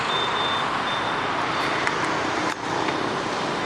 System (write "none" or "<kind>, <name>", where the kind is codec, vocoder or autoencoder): none